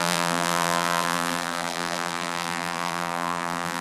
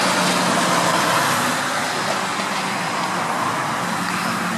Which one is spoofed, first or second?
first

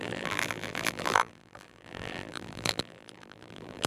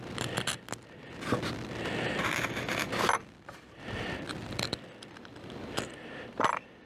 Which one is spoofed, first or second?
first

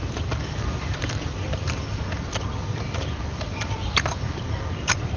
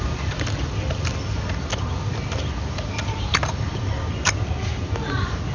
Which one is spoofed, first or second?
first